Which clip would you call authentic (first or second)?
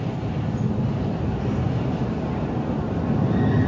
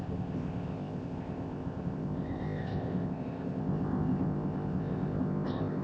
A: first